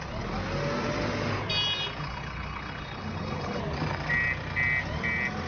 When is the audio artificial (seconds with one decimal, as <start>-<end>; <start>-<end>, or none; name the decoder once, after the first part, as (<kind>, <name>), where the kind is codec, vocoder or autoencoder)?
2.0-3.6 (codec, HILCodec)